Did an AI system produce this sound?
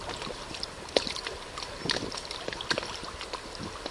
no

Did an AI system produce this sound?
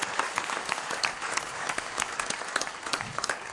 yes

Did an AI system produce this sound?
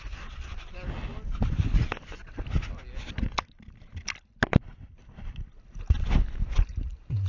no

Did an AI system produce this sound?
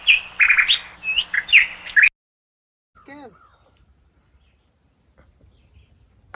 no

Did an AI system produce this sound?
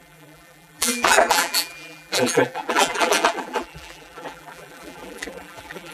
yes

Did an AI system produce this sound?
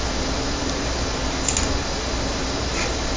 no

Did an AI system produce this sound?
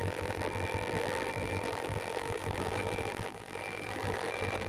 yes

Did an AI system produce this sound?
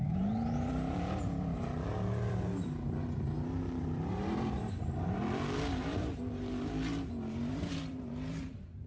yes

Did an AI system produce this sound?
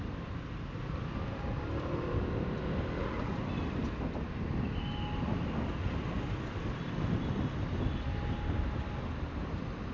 no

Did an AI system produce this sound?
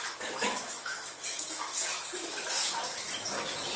yes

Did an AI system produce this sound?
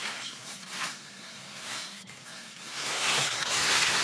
yes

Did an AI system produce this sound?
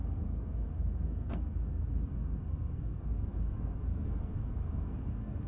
yes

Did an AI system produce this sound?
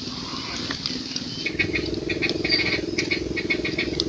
no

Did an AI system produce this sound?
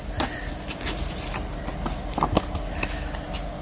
no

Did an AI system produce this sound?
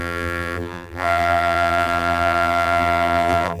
yes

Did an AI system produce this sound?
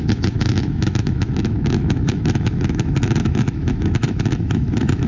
yes